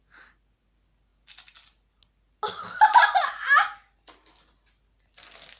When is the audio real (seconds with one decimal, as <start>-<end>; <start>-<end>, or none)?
0.0-5.6